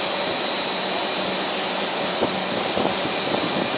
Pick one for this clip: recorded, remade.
recorded